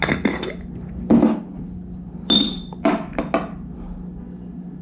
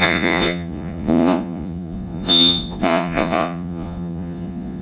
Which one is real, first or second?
first